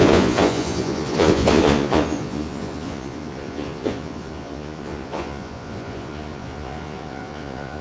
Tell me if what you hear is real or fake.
fake